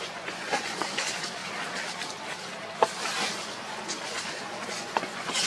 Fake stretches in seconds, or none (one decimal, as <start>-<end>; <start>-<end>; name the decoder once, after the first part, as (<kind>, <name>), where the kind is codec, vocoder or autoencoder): 0.0-1.4 (vocoder, Vocos); 3.2-5.5